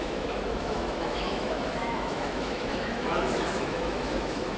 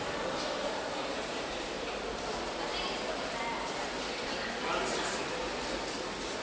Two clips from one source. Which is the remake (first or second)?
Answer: first